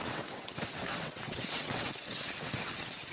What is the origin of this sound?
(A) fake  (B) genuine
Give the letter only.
A